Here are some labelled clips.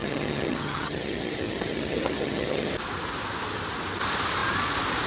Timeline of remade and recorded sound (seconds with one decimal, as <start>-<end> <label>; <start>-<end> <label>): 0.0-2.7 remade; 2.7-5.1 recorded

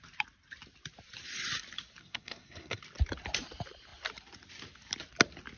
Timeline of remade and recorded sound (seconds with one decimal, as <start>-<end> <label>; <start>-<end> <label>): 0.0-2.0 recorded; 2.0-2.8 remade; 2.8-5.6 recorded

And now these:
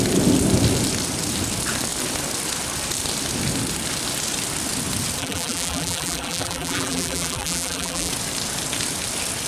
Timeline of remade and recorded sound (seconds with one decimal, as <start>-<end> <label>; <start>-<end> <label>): 0.0-5.2 recorded; 5.2-8.1 remade; 8.1-9.5 recorded